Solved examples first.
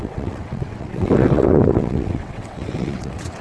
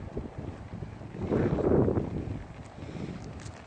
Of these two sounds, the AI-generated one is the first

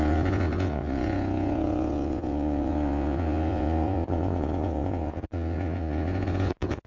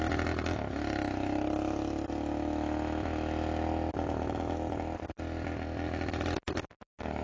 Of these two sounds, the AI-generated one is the first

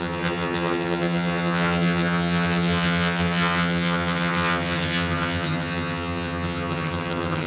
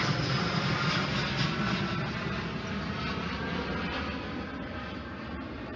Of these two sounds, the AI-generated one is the first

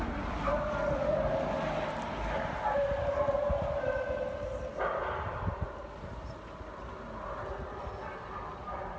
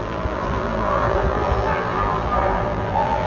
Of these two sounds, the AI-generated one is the second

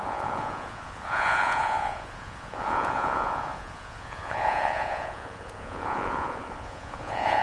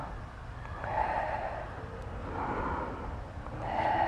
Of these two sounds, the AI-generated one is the first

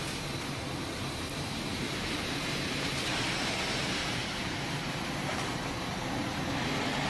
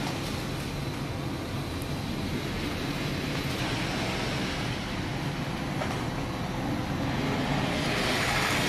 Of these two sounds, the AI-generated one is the first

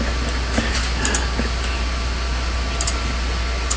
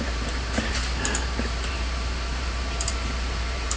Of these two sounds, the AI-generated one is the second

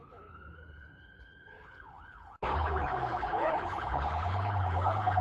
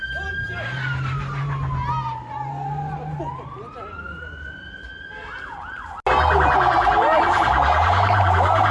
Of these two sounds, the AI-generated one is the first